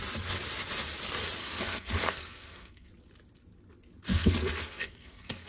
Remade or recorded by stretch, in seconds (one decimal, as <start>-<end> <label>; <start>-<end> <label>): 0.0-1.4 recorded; 1.4-2.9 remade; 2.9-4.1 recorded; 4.1-5.5 remade